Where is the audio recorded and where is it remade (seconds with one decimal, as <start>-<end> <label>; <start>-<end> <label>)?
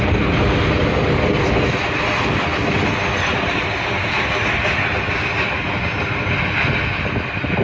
0.0-7.6 recorded